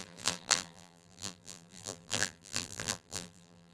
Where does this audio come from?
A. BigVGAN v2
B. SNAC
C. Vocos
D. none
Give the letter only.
A